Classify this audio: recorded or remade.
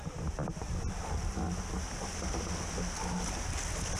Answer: recorded